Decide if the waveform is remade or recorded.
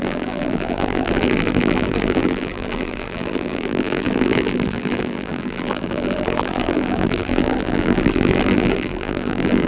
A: remade